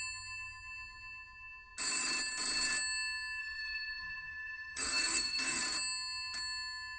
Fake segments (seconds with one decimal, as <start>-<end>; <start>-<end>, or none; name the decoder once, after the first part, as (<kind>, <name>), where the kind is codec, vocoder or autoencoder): 3.4-5.6 (codec, SNAC)